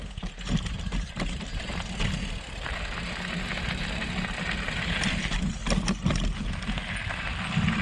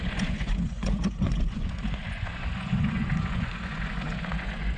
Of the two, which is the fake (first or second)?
second